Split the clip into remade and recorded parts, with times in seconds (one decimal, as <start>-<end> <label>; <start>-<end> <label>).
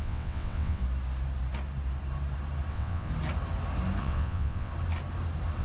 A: 0.0-0.8 remade; 0.8-2.7 recorded; 2.7-3.1 remade; 3.1-4.0 recorded; 4.0-4.7 remade; 4.7-5.6 recorded